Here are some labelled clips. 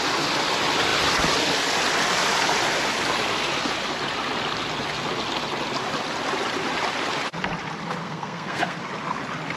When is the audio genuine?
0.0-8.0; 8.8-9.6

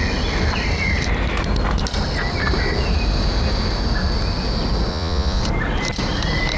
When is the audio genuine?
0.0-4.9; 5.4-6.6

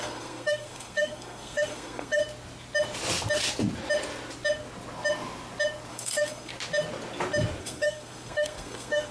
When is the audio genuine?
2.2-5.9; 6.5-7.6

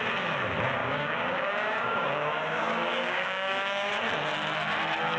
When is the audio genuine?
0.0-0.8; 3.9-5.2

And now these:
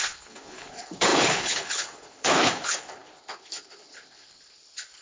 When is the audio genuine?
none

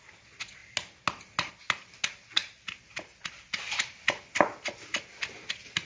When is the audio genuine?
0.0-2.4; 3.7-5.8

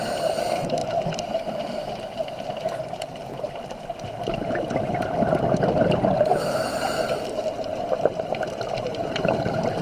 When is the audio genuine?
0.0-0.8; 1.3-6.3; 8.8-9.8

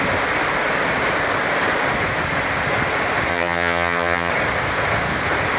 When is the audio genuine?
0.0-3.3; 4.3-5.6